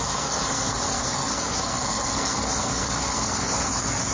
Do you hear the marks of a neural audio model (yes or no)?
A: yes